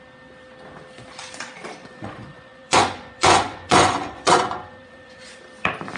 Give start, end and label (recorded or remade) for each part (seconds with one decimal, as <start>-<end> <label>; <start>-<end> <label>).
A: 0.0-1.8 recorded; 1.8-5.4 remade; 5.4-6.0 recorded